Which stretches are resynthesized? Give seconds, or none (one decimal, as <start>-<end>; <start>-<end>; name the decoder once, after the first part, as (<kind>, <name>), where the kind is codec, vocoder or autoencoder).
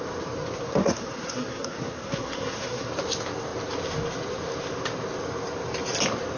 0.8-2.9 (codec, SNAC)